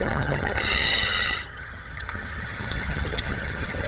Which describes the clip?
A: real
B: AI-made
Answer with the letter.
B